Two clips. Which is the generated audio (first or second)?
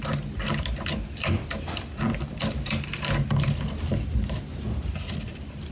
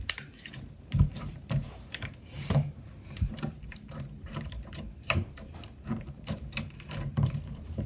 second